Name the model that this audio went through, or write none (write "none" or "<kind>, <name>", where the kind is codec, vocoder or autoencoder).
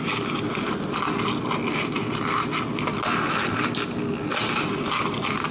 none